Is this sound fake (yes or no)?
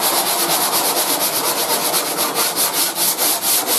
no